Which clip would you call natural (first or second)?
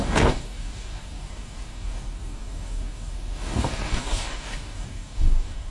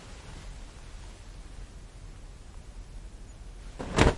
second